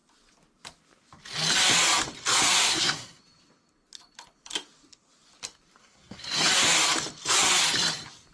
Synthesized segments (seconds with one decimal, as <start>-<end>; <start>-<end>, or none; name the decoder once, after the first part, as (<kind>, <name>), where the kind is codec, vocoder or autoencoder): 2.6-3.2 (codec, SNAC); 5.8-6.5